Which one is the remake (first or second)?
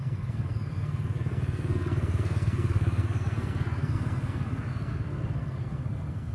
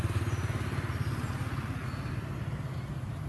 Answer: first